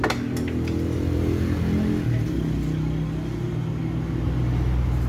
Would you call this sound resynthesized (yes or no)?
no